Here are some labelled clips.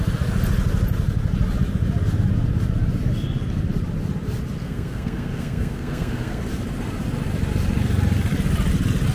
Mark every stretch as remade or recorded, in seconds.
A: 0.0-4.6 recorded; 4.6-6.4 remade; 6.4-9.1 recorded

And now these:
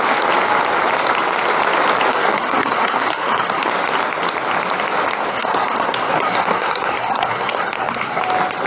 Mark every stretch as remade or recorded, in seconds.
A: 0.0-2.1 recorded; 2.1-3.7 remade; 3.7-5.3 recorded; 5.3-8.2 remade; 8.2-8.7 recorded

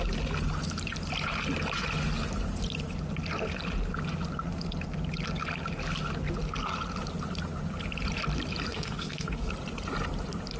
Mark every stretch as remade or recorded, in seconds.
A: 0.0-8.7 recorded; 8.7-9.5 remade; 9.5-10.6 recorded

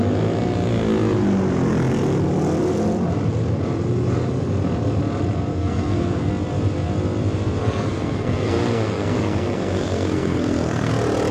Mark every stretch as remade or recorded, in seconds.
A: 0.0-5.5 recorded; 5.5-6.3 remade; 6.3-7.6 recorded; 7.6-10.9 remade; 10.9-11.3 recorded

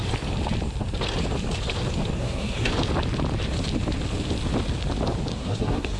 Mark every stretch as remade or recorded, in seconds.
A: 0.0-2.2 recorded; 2.2-2.7 remade; 2.7-5.3 recorded; 5.3-6.0 remade